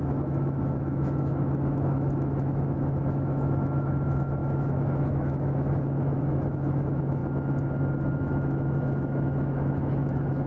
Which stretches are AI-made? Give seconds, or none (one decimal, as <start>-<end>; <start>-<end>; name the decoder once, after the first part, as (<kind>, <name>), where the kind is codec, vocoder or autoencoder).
0.0-7.2 (autoencoder, DAC-VAE); 8.2-10.5